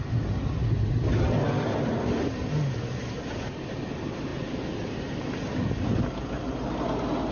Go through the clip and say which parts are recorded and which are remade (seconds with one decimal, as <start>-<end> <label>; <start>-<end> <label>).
0.0-7.3 recorded